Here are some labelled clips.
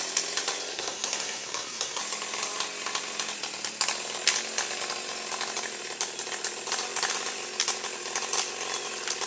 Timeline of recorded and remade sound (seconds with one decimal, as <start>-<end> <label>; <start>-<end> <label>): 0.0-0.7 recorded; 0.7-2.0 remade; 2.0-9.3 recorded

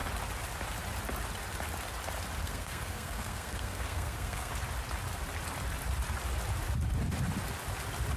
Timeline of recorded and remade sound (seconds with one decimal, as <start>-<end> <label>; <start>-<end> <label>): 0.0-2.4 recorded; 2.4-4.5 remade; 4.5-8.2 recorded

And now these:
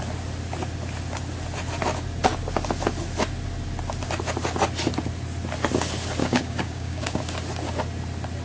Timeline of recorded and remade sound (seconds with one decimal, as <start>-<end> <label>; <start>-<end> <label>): 0.0-6.2 recorded; 6.2-7.2 remade; 7.2-8.4 recorded

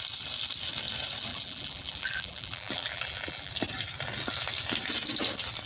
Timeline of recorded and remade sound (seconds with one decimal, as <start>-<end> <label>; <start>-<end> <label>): 0.0-1.3 recorded; 1.3-3.5 remade; 3.5-5.7 recorded

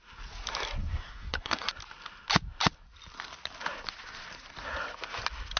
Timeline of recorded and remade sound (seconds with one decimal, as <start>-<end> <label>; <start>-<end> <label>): 0.0-0.8 recorded; 0.8-1.7 remade; 1.7-5.6 recorded

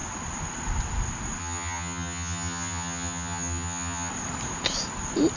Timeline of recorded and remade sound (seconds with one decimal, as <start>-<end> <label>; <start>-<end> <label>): 0.0-1.4 recorded; 1.4-4.1 remade; 4.1-5.4 recorded